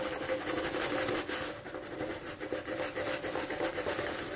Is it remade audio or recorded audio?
recorded